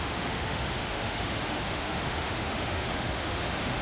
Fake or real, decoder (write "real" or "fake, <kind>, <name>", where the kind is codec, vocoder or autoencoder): fake, autoencoder, DAC-VAE